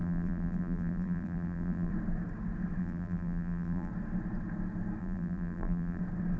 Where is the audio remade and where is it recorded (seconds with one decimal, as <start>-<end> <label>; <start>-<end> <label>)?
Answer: 0.0-1.9 remade; 1.9-2.8 recorded; 2.8-3.9 remade; 3.9-5.0 recorded; 5.0-6.0 remade; 6.0-6.4 recorded